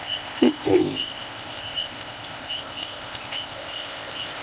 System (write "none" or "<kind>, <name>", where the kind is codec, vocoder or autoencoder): codec, ZipCodec